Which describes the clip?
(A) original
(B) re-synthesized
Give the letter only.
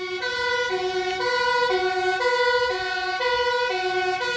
A